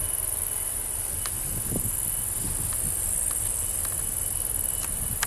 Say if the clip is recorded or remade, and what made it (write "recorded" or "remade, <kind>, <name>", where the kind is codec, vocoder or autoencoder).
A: recorded